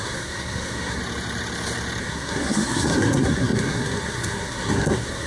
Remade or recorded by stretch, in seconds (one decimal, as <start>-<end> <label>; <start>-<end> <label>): 0.0-1.0 remade; 1.0-2.0 recorded; 2.0-5.3 remade